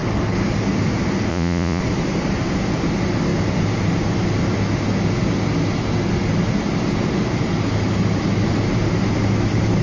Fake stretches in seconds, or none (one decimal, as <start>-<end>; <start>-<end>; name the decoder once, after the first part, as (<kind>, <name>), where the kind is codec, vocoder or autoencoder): 1.3-1.8 (vocoder, Vocos)